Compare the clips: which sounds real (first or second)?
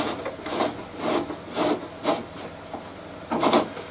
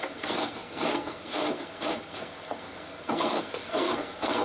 first